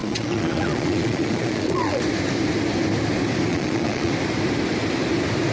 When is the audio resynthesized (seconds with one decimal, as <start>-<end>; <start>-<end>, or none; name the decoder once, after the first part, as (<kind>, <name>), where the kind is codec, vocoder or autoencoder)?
0.0-2.0 (vocoder, Vocos); 3.5-4.1